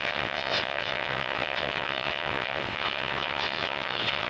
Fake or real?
fake